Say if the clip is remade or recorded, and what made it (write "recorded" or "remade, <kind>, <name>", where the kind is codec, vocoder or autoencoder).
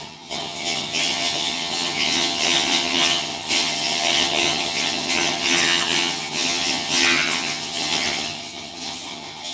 remade, vocoder, HiFi-GAN